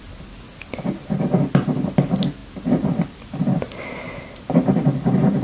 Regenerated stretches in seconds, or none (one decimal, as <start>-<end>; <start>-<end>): none

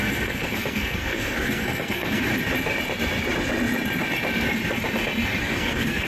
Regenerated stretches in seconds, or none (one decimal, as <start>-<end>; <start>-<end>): 0.0-2.3; 5.4-6.1

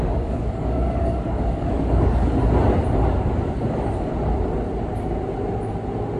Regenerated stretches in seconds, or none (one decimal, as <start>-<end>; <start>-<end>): 0.0-2.2; 3.2-4.1